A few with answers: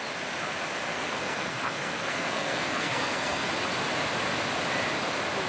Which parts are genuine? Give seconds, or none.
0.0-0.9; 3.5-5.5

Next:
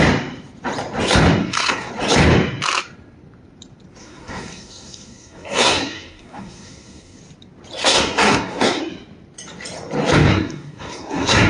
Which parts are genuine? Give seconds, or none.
0.0-1.4; 1.9-4.0; 7.2-7.8; 8.8-10.3